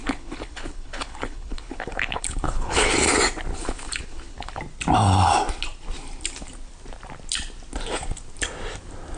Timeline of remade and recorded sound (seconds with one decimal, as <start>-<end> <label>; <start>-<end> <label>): 0.0-2.9 remade; 2.9-3.5 recorded; 3.5-4.6 remade; 4.6-9.2 recorded